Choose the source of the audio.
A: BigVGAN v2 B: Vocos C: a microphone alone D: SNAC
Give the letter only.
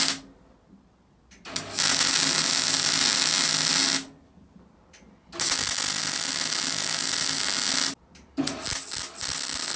C